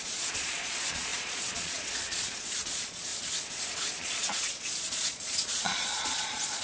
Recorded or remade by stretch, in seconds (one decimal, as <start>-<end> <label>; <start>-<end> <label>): 0.0-3.1 remade; 3.1-3.8 recorded; 3.8-6.6 remade